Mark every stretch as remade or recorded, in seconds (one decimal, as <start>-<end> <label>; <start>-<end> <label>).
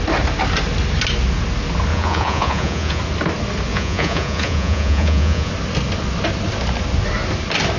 0.0-1.9 recorded; 1.9-3.0 remade; 3.0-3.7 recorded; 3.7-5.5 remade; 5.5-7.8 recorded